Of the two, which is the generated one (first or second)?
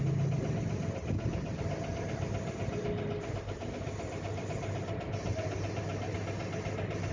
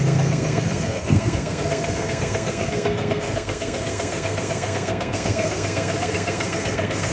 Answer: second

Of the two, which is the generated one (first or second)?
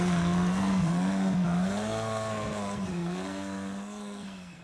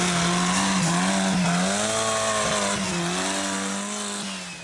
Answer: first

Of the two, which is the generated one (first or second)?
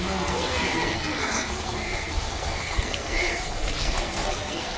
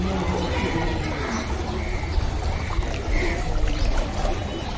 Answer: first